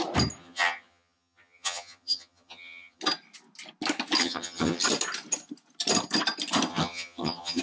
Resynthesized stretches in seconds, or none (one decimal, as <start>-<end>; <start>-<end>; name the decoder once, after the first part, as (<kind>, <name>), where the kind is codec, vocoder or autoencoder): 0.4-3.0 (vocoder, HiFi-GAN); 4.2-4.8; 6.7-7.6